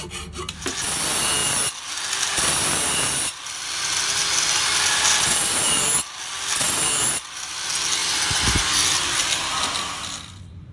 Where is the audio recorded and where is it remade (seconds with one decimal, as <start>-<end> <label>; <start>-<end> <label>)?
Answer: 0.0-1.4 recorded; 1.4-1.9 remade; 1.9-2.3 recorded; 2.3-7.4 remade; 7.4-10.7 recorded

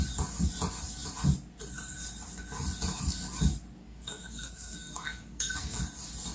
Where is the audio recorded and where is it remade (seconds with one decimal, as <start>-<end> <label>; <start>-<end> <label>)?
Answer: 0.0-3.8 recorded; 3.8-5.8 remade; 5.8-6.3 recorded

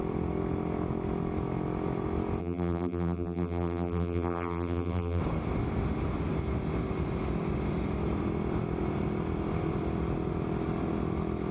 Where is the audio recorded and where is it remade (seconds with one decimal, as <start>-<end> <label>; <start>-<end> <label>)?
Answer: 0.0-2.4 recorded; 2.4-5.2 remade; 5.2-11.5 recorded

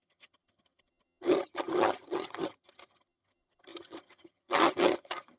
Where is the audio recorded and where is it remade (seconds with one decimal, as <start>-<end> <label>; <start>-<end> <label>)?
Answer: 0.0-5.4 remade

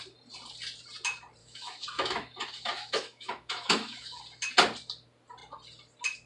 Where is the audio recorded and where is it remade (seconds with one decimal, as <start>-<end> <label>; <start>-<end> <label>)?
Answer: 0.0-1.4 recorded; 1.4-4.2 remade; 4.2-6.3 recorded